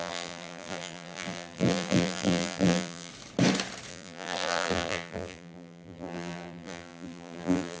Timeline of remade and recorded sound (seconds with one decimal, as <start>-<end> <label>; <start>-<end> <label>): 0.0-3.1 remade; 3.1-3.9 recorded; 3.9-7.8 remade